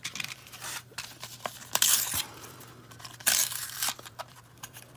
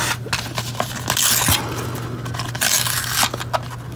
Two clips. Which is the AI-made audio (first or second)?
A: first